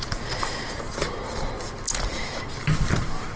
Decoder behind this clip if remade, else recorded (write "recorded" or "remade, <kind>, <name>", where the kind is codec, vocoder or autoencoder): recorded